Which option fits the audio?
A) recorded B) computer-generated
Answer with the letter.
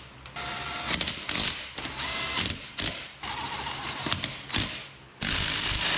A